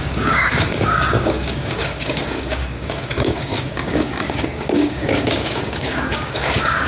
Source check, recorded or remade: remade